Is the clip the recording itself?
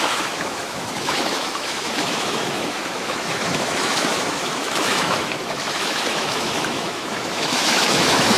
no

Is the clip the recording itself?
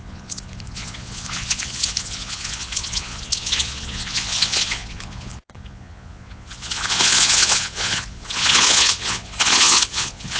no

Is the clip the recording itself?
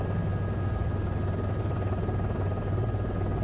yes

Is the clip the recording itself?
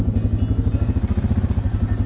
yes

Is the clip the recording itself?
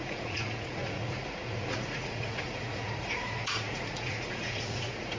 no